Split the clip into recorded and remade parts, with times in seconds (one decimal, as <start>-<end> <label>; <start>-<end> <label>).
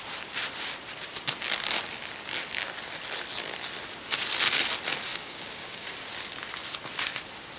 0.0-5.1 recorded; 5.1-5.9 remade; 5.9-7.6 recorded